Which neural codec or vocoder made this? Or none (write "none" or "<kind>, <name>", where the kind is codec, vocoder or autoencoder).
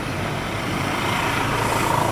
vocoder, BigVGAN v2